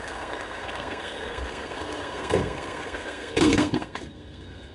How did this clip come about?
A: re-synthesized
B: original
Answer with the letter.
A